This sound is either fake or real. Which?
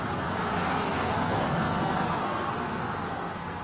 fake